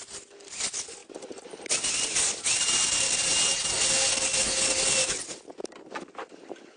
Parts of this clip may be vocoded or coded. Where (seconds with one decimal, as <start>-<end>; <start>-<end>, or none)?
none